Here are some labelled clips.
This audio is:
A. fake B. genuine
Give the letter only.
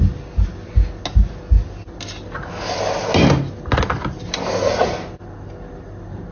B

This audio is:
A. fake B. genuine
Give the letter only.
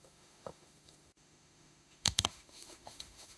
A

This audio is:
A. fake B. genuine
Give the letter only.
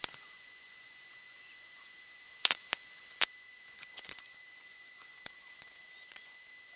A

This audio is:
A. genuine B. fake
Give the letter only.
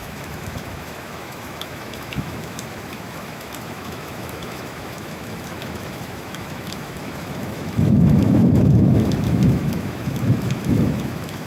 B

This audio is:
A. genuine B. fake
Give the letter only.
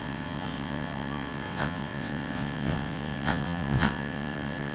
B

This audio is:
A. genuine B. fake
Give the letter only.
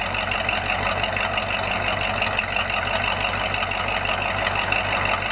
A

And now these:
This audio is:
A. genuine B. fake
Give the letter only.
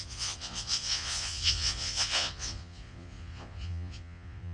B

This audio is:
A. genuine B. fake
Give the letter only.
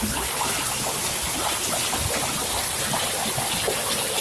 A